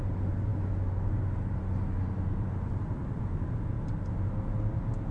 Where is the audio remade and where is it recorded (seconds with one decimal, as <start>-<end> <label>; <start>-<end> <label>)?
0.0-5.1 recorded